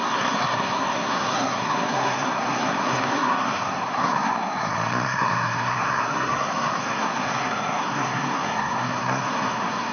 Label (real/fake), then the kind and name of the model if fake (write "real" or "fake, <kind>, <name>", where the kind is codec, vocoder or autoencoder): fake, codec, SNAC